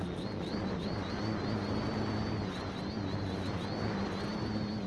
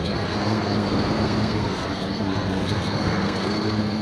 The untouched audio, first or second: first